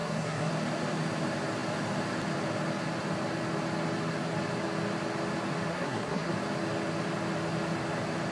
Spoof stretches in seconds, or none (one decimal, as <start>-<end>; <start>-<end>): 0.0-0.5; 5.7-6.3